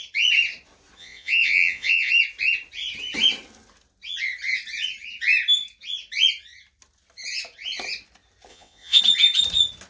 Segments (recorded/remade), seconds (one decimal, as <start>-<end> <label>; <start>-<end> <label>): 0.0-1.0 recorded; 1.0-2.1 remade; 2.1-8.5 recorded; 8.5-9.0 remade; 9.0-9.9 recorded